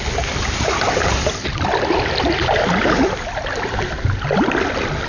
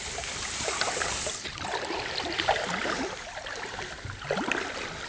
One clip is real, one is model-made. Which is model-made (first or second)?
second